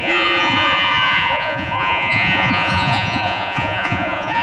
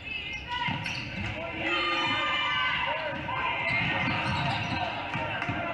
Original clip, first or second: second